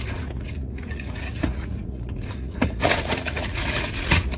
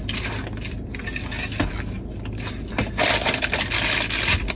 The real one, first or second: second